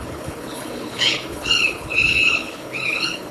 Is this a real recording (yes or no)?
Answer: no